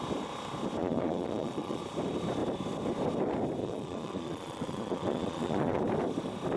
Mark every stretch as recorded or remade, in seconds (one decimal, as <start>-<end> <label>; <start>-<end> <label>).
0.0-0.8 recorded; 0.8-1.8 remade; 1.8-3.6 recorded; 3.6-5.8 remade; 5.8-6.6 recorded